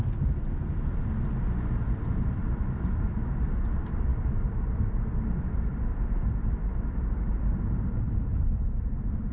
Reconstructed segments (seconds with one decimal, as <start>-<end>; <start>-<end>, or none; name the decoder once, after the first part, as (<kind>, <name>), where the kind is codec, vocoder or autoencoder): 0.0-9.3 (vocoder, BigVGAN v2)